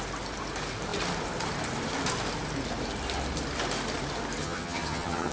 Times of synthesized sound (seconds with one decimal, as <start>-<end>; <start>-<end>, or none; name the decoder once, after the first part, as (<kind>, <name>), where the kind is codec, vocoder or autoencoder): 4.4-5.3 (vocoder, HiFi-GAN)